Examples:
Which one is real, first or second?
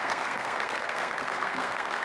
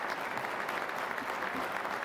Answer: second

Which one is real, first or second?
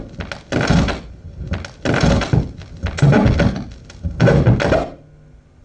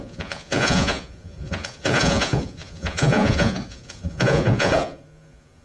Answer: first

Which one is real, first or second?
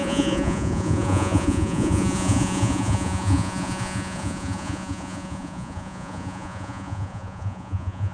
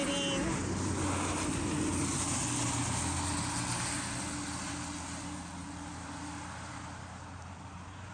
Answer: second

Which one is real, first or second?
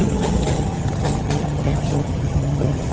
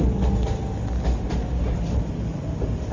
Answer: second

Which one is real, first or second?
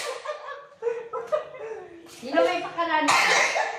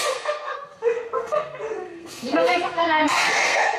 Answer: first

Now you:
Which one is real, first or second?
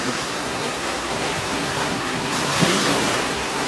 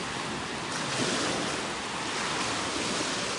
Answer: second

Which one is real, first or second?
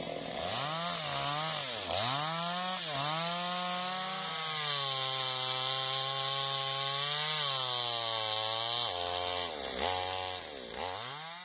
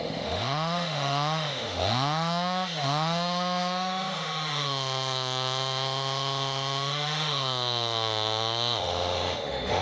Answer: first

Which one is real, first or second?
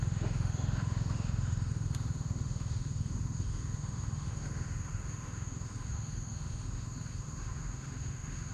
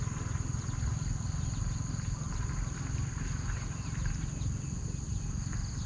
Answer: second